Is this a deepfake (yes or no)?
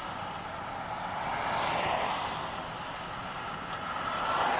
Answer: no